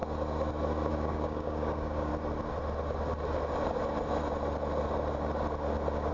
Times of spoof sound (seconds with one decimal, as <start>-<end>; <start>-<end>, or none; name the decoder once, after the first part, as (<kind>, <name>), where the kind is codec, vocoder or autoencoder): 0.9-2.1 (codec, DAC)